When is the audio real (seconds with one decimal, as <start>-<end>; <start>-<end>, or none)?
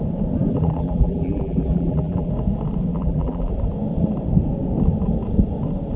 0.0-0.5; 2.3-2.9; 3.5-6.0